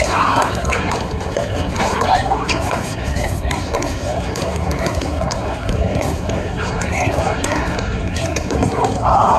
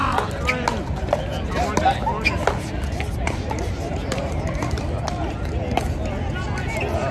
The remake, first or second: first